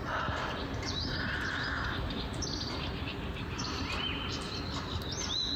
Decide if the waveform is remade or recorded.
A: remade